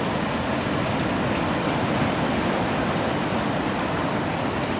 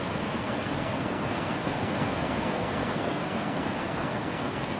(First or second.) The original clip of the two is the first